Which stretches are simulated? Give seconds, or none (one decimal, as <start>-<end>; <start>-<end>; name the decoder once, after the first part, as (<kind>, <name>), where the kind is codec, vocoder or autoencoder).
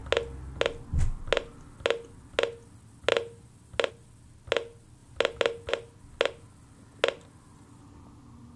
none